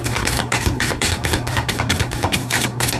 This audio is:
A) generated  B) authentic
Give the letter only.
A